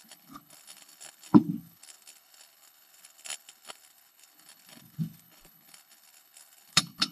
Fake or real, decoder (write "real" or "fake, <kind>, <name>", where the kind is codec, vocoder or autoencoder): fake, codec, HILCodec